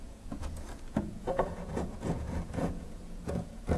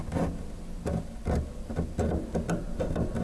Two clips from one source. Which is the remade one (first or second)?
first